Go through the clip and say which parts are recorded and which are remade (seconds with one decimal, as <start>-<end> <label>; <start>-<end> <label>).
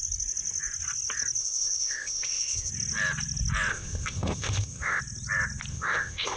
0.0-1.4 recorded; 1.4-2.7 remade; 2.7-3.7 recorded; 3.7-5.0 remade; 5.0-5.7 recorded; 5.7-6.4 remade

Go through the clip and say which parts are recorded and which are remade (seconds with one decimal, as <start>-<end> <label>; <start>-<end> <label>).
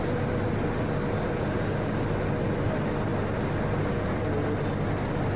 0.0-5.4 recorded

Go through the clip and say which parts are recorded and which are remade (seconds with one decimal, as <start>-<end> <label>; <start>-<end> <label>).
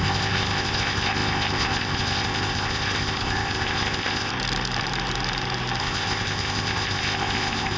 0.0-4.3 remade; 4.3-5.8 recorded; 5.8-7.8 remade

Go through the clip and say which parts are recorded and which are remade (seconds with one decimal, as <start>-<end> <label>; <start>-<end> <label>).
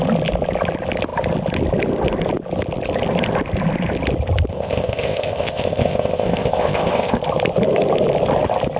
0.0-4.5 recorded; 4.5-7.2 remade; 7.2-8.8 recorded